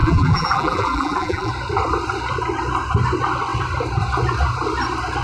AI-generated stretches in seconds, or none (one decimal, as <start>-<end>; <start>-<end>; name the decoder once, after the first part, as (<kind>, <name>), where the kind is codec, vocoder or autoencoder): 0.0-1.5 (vocoder, BigVGAN v2)